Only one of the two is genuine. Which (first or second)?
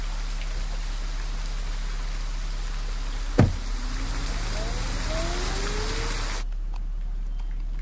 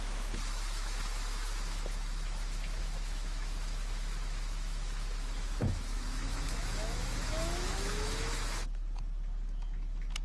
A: first